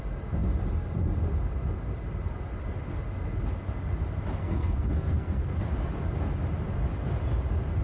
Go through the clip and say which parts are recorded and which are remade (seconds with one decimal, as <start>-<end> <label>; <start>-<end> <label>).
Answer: 0.0-4.4 recorded; 4.4-5.6 remade; 5.6-7.8 recorded